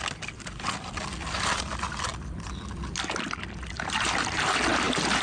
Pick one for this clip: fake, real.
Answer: real